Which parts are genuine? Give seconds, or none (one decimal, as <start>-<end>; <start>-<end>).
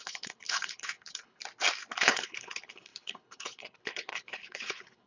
1.4-2.0